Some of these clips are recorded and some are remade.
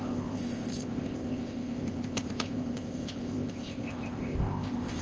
remade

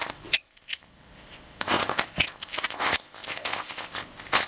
remade